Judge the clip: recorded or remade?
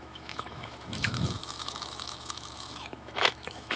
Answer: remade